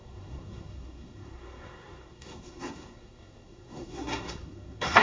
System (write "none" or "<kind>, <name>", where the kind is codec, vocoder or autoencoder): codec, SNAC